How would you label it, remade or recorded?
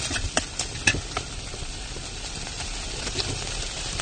recorded